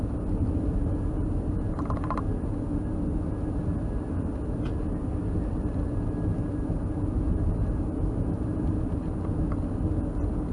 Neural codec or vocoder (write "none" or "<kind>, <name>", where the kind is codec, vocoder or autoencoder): none